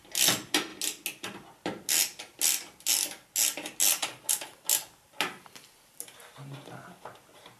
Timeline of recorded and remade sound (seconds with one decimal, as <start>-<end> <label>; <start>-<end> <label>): 0.0-7.6 recorded